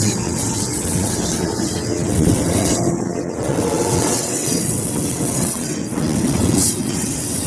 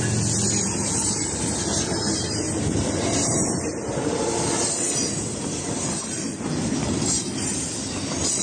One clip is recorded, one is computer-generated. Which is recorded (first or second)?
second